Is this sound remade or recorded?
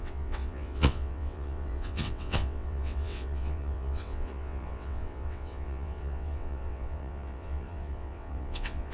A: remade